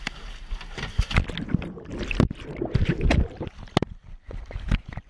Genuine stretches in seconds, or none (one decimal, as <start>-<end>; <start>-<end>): 0.0-5.1